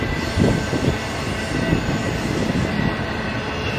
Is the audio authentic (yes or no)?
yes